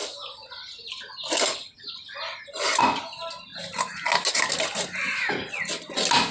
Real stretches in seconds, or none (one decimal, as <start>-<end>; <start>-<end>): 0.0-6.3